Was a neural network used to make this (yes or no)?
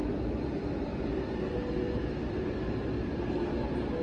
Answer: no